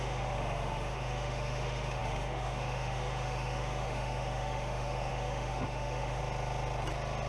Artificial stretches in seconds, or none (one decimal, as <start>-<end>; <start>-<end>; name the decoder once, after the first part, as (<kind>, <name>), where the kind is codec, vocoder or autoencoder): 0.0-6.2 (autoencoder, DAC-VAE)